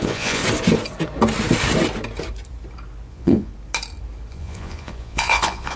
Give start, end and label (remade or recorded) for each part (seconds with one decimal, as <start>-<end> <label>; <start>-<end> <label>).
0.0-0.4 remade; 0.4-3.1 recorded; 3.1-3.5 remade; 3.5-4.3 recorded; 4.3-5.8 remade